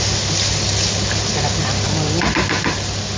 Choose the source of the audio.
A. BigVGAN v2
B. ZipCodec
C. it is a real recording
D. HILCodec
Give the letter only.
C